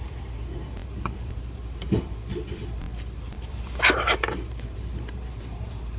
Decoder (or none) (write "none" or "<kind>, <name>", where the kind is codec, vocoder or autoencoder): vocoder, BigVGAN v2